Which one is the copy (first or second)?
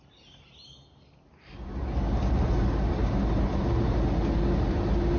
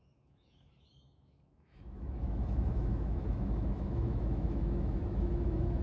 second